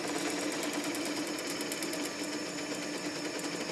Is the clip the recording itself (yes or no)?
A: yes